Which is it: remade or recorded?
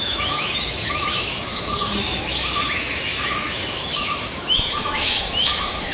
remade